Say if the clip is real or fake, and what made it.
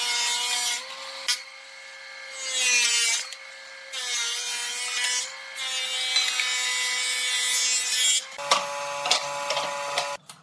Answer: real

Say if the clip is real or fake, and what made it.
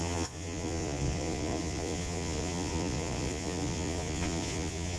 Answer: fake, vocoder, Vocos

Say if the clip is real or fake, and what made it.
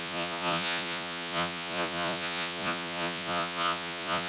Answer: fake, vocoder, Vocos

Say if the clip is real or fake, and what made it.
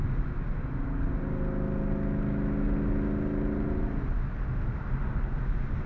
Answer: real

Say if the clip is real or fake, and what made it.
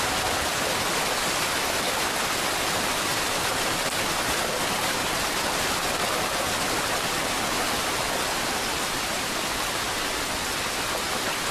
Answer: real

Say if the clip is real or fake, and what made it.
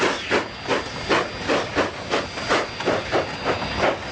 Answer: real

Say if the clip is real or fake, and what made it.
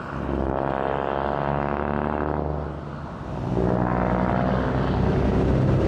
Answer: real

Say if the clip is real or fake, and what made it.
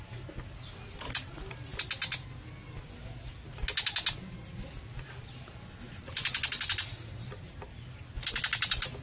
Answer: real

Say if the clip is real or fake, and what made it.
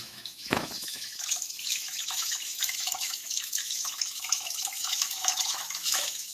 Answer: fake, autoencoder, DAC-VAE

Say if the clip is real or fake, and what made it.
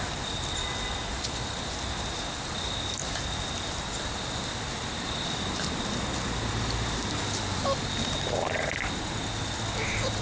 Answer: real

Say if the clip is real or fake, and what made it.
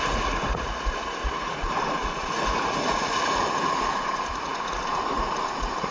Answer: fake, vocoder, Vocos